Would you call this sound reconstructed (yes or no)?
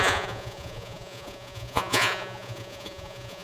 yes